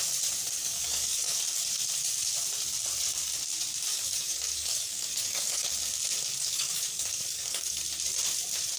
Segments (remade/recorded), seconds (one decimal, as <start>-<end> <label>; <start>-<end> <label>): 0.0-0.6 recorded; 0.6-1.4 remade; 1.4-3.9 recorded; 3.9-5.7 remade; 5.7-6.4 recorded; 6.4-7.8 remade; 7.8-8.8 recorded